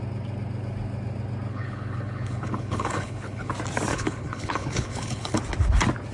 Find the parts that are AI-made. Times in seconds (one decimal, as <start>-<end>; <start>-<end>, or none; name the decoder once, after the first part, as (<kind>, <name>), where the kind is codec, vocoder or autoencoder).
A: 1.5-3.5 (codec, HILCodec); 3.9-5.4